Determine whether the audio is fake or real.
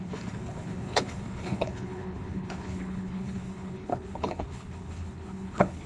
fake